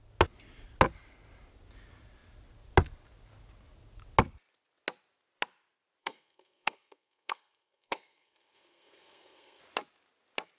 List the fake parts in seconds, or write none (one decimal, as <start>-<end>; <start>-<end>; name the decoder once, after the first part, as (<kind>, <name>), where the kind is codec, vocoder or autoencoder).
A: 6.0-9.6 (codec, SNAC)